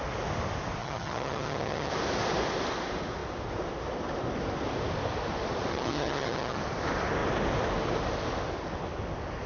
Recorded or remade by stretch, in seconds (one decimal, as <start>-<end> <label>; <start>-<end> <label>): 0.0-0.8 recorded; 0.8-1.9 remade; 1.9-5.7 recorded; 5.7-6.6 remade; 6.6-9.5 recorded